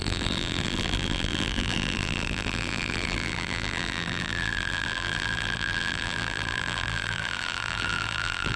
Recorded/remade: remade